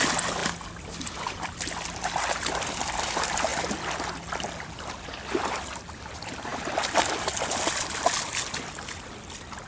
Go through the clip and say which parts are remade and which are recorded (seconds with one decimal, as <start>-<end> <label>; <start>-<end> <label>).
0.0-9.7 recorded